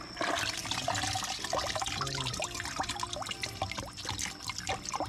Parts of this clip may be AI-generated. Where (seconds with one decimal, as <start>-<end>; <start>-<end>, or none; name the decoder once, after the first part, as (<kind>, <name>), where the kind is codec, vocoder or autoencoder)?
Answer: none